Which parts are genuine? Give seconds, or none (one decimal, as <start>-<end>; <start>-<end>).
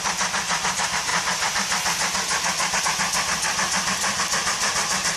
0.0-4.1; 4.7-5.2